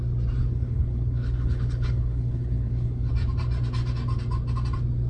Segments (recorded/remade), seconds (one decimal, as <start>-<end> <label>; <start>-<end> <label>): 0.0-0.4 recorded; 0.4-3.1 remade; 3.1-5.1 recorded